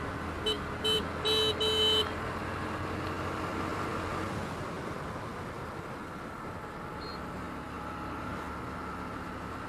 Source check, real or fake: real